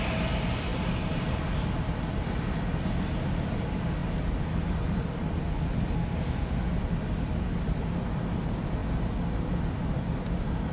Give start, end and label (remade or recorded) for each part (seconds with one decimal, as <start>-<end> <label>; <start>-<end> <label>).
0.0-10.7 recorded